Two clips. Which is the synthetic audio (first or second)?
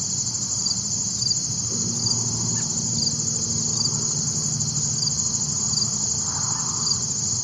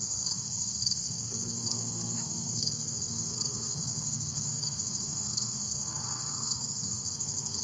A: second